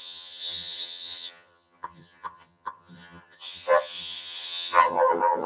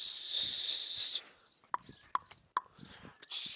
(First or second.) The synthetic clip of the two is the first